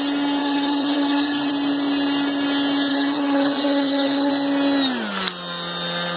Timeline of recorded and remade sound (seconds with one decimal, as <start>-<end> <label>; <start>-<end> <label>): 0.0-0.4 recorded; 0.4-1.5 remade; 1.5-2.9 recorded; 2.9-4.3 remade; 4.3-6.2 recorded